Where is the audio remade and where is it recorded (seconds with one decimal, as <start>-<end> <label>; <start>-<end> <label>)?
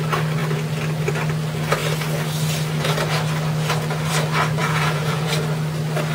0.0-4.6 recorded; 4.6-5.3 remade; 5.3-6.1 recorded